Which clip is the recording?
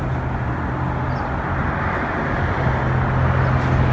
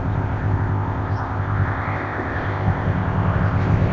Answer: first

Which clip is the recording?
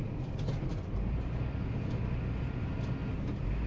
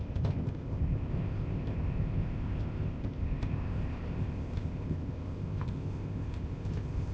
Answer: first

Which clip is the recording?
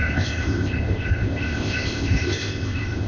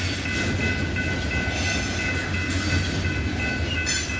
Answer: second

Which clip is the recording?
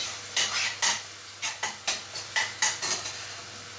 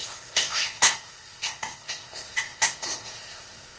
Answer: first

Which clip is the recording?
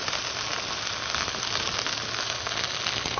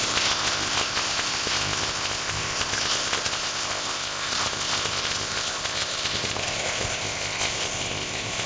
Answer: first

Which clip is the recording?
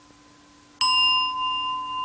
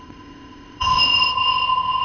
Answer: first